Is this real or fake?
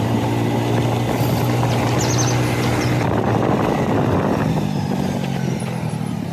real